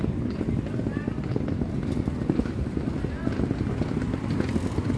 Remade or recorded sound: recorded